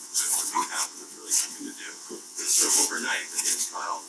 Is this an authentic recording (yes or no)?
no